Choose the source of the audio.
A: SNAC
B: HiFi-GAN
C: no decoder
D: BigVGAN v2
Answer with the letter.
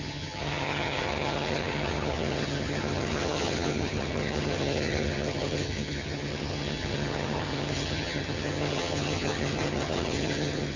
B